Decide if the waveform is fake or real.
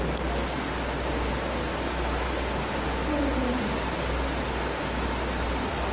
real